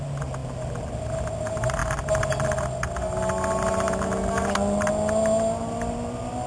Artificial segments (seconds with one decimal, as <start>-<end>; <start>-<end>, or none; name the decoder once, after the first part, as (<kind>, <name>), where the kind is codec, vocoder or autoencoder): none